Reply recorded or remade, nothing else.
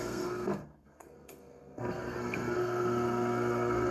remade